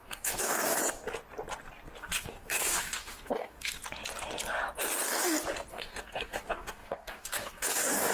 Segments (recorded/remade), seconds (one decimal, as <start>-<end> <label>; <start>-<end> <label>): 0.0-0.8 remade; 0.8-2.0 recorded; 2.0-3.8 remade; 3.8-5.7 recorded; 5.7-8.1 remade